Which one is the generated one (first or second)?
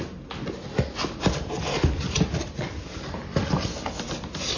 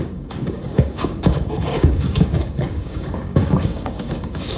second